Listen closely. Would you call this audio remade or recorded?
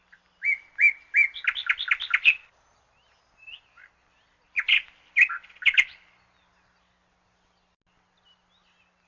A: recorded